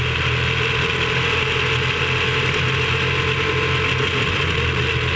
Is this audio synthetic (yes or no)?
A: no